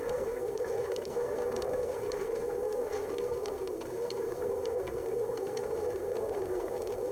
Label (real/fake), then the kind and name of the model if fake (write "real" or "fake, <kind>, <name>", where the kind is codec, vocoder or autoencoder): fake, codec, SNAC